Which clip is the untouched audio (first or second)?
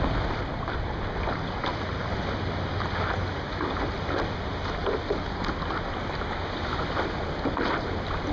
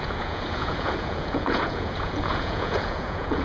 first